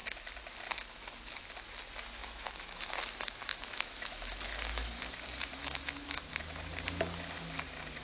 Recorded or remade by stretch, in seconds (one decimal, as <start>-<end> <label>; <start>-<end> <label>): 0.0-2.2 recorded; 2.2-2.9 remade; 2.9-3.5 recorded; 3.5-5.1 remade; 5.1-5.6 recorded; 5.6-6.3 remade; 6.3-8.0 recorded